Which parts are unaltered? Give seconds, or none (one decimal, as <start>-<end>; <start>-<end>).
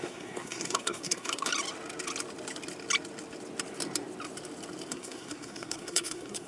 1.5-4.9